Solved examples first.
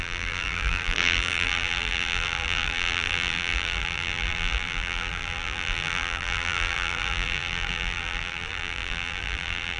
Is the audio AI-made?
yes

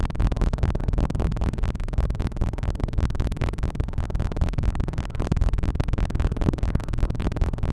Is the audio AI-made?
yes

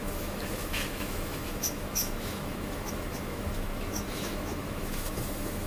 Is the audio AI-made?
yes